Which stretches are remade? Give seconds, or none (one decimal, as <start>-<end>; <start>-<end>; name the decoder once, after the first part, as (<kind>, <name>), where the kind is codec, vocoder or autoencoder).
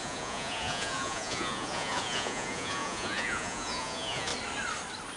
0.0-4.3 (vocoder, Vocos)